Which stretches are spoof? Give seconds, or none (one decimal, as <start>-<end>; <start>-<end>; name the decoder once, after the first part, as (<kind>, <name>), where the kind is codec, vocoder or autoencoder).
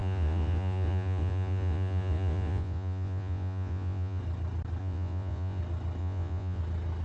0.0-4.2 (vocoder, Vocos); 4.8-5.6; 6.0-6.6